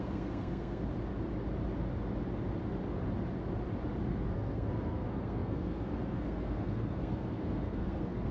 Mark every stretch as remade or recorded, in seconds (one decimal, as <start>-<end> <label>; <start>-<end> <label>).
0.0-0.8 remade; 0.8-4.1 recorded; 4.1-8.3 remade